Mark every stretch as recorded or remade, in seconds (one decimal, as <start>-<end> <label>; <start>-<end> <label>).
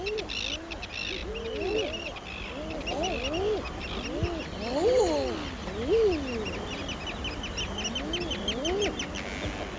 0.0-9.8 recorded